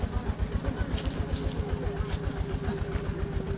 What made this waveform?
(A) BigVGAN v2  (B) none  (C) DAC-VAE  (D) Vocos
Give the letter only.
B